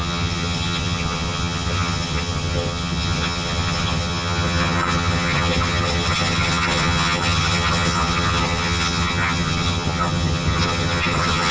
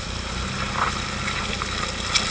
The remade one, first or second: first